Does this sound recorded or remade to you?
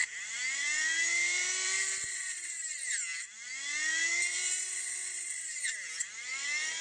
remade